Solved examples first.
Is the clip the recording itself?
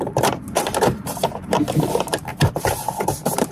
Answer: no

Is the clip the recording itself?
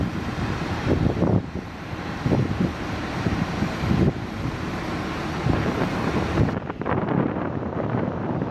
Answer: no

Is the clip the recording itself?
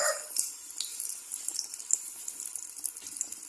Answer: yes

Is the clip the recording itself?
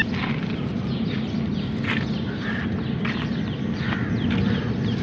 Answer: yes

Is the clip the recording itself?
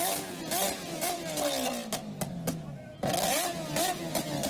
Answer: yes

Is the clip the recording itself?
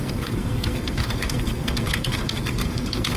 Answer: no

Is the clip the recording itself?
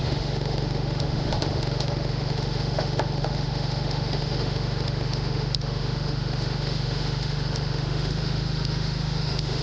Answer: no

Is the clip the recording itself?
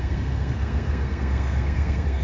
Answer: no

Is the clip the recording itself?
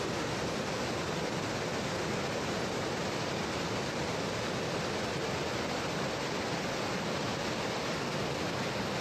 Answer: yes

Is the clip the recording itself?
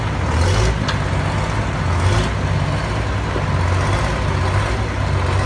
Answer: yes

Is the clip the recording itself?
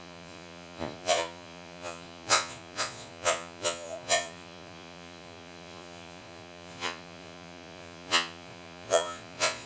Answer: no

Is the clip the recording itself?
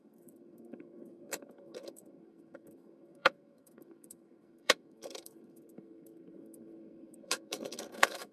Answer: no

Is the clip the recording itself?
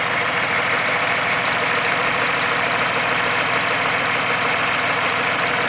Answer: no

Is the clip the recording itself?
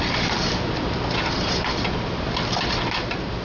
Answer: no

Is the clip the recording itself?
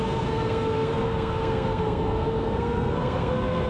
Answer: no